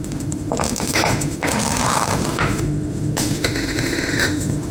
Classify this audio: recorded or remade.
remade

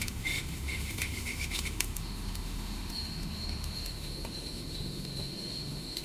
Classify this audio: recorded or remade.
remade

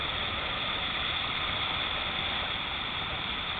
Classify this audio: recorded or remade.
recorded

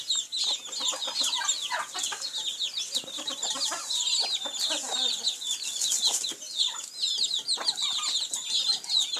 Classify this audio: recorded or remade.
recorded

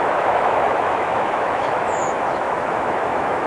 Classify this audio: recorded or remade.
remade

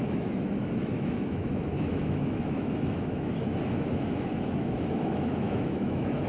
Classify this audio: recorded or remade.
remade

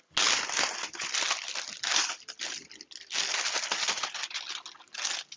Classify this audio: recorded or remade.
recorded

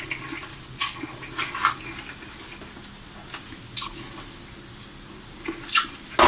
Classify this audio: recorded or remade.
recorded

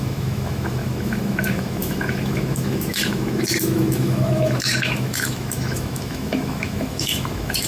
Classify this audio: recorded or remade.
remade